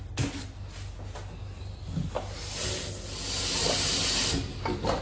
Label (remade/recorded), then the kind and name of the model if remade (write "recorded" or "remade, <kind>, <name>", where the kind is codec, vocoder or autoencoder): recorded